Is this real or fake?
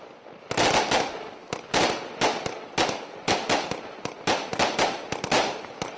real